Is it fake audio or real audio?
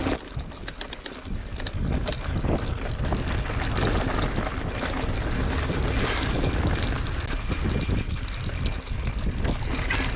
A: real